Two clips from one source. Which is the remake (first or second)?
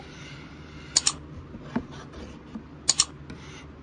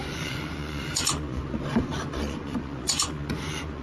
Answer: second